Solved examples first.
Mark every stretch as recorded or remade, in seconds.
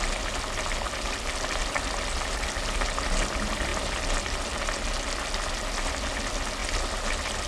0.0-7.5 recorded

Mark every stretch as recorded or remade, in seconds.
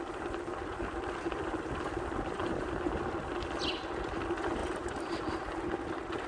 0.0-2.4 recorded; 2.4-3.1 remade; 3.1-4.6 recorded; 4.6-5.7 remade; 5.7-6.3 recorded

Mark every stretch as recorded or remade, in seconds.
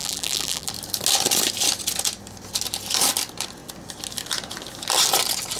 0.0-0.7 remade; 0.7-5.6 recorded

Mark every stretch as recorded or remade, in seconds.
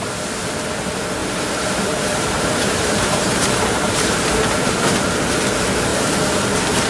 0.0-1.2 recorded; 1.2-5.3 remade; 5.3-5.9 recorded; 5.9-6.9 remade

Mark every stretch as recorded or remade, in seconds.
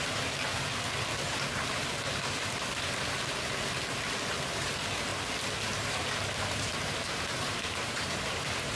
0.0-0.5 remade; 0.5-4.1 recorded; 4.1-5.1 remade; 5.1-5.8 recorded; 5.8-8.7 remade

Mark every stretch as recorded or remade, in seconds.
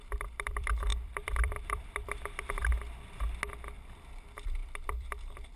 0.0-2.7 remade; 2.7-3.5 recorded; 3.5-5.6 remade